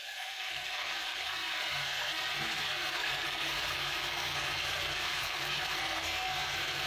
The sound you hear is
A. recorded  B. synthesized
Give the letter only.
B